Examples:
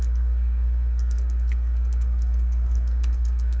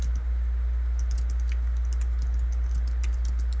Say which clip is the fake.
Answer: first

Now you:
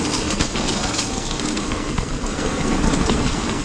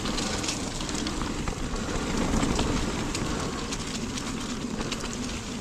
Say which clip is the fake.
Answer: first